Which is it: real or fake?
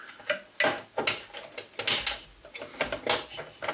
real